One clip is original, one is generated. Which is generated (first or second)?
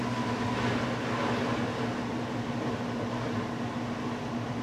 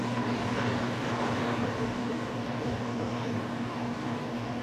second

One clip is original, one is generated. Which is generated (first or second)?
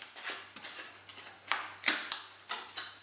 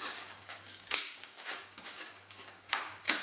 second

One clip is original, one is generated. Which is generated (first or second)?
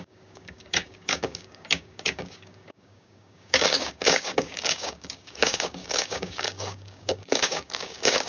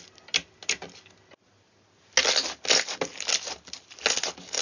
first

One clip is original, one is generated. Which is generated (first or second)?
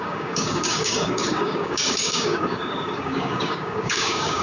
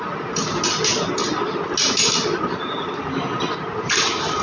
first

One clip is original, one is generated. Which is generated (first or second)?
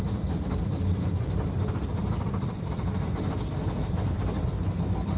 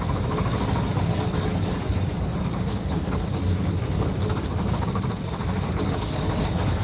second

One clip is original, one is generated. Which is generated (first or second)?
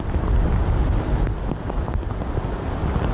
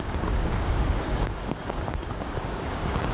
second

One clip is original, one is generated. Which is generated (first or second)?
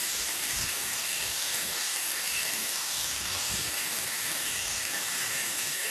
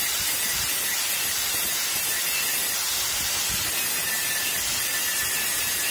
first